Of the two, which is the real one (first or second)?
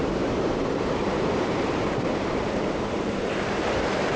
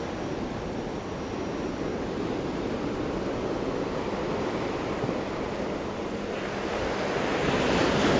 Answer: second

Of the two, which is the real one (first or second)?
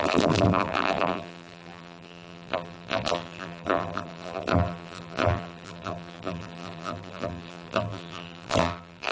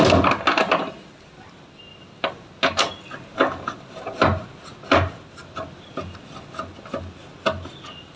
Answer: second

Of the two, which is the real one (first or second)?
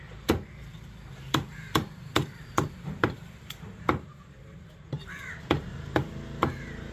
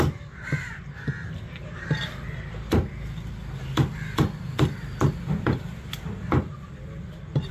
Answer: second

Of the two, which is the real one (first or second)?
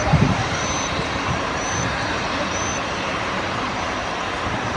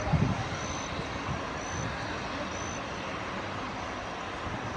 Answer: second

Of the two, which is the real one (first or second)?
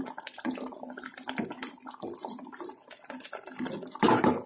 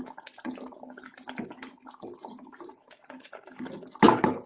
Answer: second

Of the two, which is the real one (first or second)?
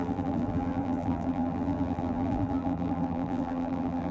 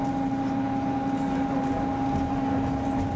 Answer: second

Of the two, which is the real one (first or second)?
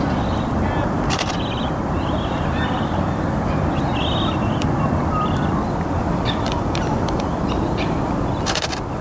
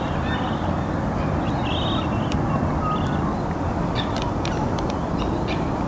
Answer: second